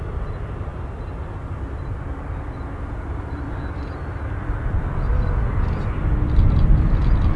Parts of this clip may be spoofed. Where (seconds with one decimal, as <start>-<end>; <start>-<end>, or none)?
none